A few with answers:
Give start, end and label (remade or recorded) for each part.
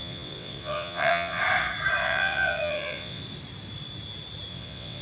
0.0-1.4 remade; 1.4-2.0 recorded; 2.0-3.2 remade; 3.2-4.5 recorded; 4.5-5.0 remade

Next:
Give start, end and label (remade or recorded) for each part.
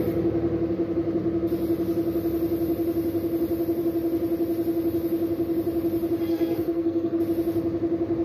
0.0-6.3 recorded; 6.3-7.2 remade; 7.2-8.2 recorded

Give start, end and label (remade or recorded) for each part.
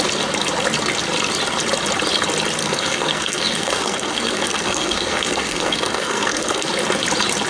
0.0-2.6 recorded; 2.6-6.7 remade; 6.7-7.5 recorded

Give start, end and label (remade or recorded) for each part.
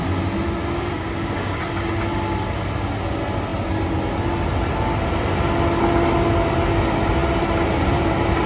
0.0-0.6 recorded; 0.6-1.5 remade; 1.5-8.5 recorded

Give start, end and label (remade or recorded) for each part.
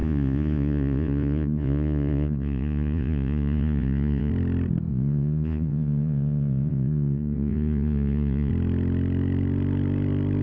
0.0-4.3 remade; 4.3-4.9 recorded; 4.9-8.5 remade; 8.5-10.4 recorded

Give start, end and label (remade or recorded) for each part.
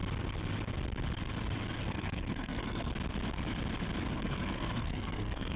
0.0-1.8 recorded; 1.8-2.9 remade; 2.9-4.1 recorded; 4.1-5.6 remade